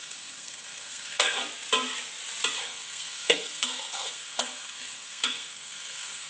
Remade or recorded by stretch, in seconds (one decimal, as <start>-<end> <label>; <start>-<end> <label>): 0.0-1.4 remade; 1.4-2.6 recorded; 2.6-6.3 remade